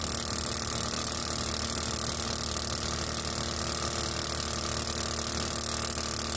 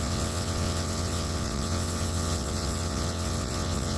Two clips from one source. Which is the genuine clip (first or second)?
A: first